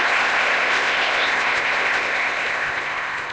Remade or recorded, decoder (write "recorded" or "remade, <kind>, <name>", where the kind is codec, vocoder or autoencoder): remade, codec, ZipCodec